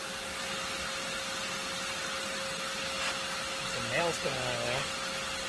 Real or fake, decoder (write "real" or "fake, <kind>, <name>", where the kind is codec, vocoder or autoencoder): real